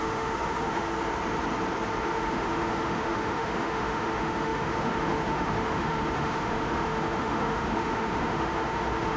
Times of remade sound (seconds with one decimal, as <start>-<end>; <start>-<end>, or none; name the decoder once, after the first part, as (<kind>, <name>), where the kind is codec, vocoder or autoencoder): 0.0-0.9 (autoencoder, DAC-VAE); 2.0-9.2